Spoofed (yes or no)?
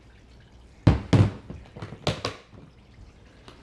no